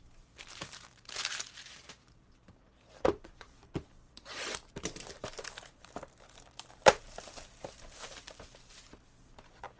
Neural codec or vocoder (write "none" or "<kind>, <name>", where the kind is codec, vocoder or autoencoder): vocoder, BigVGAN v2